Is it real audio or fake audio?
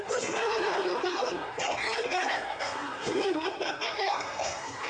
fake